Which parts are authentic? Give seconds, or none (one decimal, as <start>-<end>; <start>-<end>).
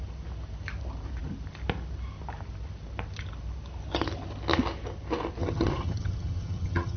0.0-5.4